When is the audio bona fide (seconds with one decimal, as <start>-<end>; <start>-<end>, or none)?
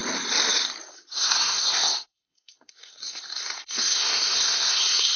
0.0-0.9